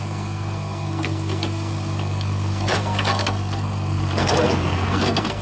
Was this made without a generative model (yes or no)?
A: no